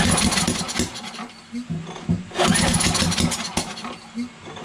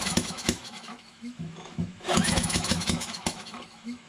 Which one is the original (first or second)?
first